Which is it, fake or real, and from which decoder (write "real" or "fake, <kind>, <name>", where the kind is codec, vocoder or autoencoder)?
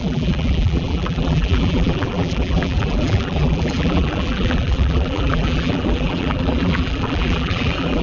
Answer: fake, vocoder, BigVGAN v2